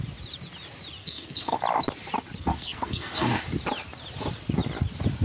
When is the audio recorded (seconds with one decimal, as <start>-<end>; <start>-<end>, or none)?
0.0-1.0; 1.6-2.5; 3.4-5.2